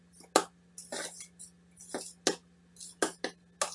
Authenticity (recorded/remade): recorded